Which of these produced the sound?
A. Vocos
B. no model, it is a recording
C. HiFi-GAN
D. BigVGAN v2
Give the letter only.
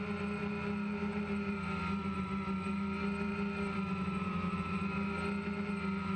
D